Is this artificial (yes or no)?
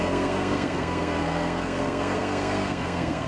yes